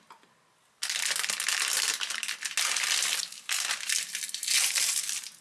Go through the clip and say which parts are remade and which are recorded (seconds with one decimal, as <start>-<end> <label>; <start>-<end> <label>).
0.0-5.4 recorded